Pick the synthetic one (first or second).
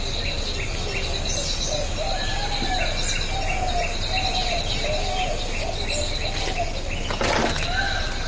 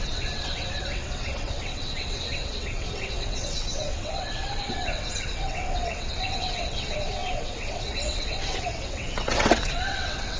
second